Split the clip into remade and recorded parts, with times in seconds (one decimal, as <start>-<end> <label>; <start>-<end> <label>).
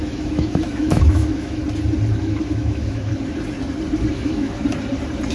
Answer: 0.0-1.6 remade; 1.6-2.2 recorded; 2.2-3.1 remade; 3.1-4.1 recorded; 4.1-4.6 remade; 4.6-5.3 recorded